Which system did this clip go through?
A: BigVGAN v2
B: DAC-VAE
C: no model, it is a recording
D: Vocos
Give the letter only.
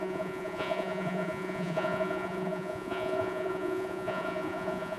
D